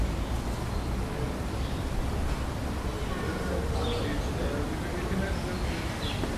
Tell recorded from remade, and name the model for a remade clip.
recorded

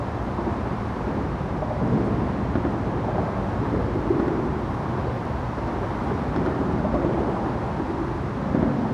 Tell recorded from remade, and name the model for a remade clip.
recorded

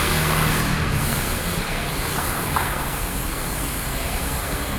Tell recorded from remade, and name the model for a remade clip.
remade, codec, SNAC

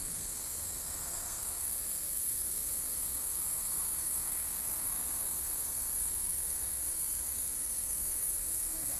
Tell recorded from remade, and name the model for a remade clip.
remade, codec, SNAC